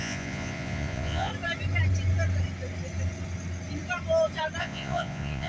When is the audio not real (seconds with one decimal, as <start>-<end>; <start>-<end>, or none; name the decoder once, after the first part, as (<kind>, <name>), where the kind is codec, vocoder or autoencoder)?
0.0-1.3 (vocoder, Vocos); 4.6-5.5